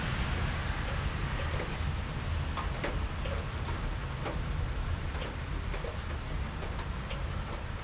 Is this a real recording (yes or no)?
yes